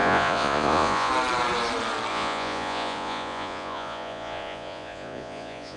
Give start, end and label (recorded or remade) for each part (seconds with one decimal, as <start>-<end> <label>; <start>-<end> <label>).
0.0-1.1 remade; 1.1-2.1 recorded; 2.1-5.8 remade